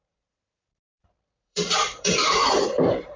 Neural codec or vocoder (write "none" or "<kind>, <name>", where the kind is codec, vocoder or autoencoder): vocoder, BigVGAN v2